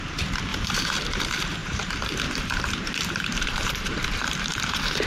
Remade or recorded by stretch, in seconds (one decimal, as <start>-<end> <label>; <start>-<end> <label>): 0.0-0.5 recorded; 0.5-1.2 remade; 1.2-1.6 recorded; 1.6-5.1 remade

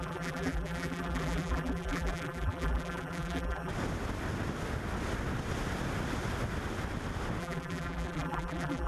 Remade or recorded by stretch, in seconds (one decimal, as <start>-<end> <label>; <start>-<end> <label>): 0.0-3.7 remade; 3.7-7.4 recorded; 7.4-8.9 remade

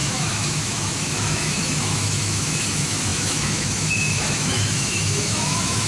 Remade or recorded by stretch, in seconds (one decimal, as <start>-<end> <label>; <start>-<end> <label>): 0.0-5.9 remade

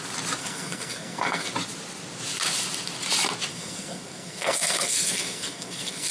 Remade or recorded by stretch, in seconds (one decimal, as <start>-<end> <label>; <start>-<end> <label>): 0.0-0.4 recorded; 0.4-1.5 remade; 1.5-3.5 recorded; 3.5-6.1 remade

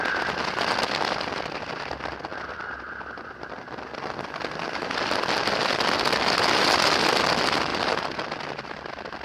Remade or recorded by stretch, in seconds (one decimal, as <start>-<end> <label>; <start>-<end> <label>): 0.0-7.7 recorded; 7.7-8.3 remade; 8.3-9.2 recorded

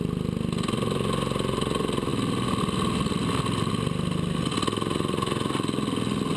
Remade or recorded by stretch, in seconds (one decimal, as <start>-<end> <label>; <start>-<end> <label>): 0.0-6.4 recorded

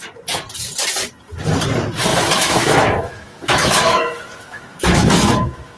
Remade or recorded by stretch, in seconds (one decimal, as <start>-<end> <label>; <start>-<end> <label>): 0.0-2.1 recorded; 2.1-5.8 remade

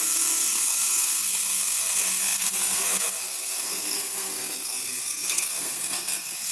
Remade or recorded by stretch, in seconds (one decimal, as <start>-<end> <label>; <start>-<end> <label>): 0.0-6.5 remade